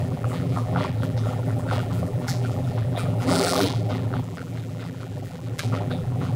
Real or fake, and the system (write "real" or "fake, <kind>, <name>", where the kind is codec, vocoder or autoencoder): fake, vocoder, BigVGAN v2